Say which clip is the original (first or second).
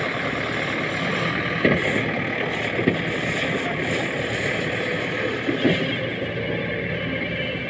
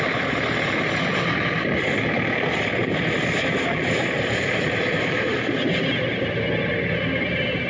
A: first